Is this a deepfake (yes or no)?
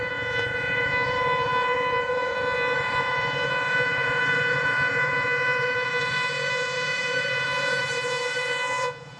yes